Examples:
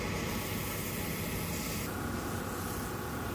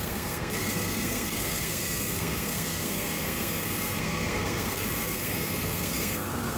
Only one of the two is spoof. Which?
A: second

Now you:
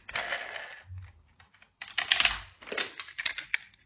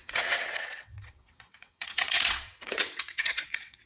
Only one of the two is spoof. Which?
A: second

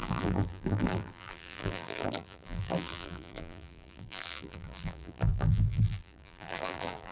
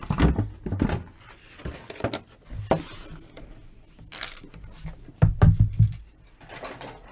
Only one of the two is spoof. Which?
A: first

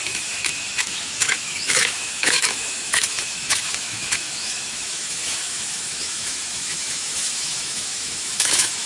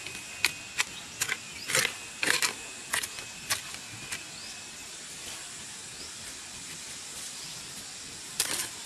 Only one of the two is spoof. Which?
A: first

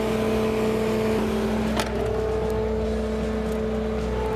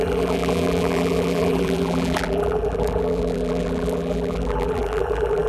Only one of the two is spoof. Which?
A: second